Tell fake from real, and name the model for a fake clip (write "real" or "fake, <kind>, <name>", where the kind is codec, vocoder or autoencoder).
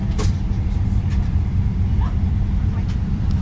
fake, vocoder, BigVGAN v2